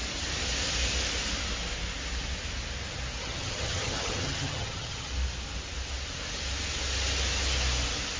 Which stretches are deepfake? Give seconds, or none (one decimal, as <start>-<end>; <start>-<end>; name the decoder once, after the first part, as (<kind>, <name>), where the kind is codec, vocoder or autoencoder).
3.2-5.1 (vocoder, HiFi-GAN)